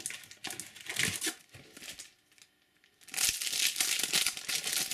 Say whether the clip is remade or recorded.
recorded